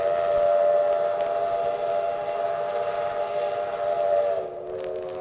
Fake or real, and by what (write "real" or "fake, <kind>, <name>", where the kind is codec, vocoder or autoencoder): real